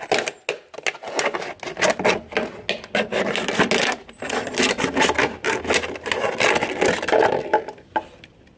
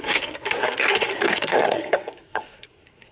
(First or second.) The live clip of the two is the first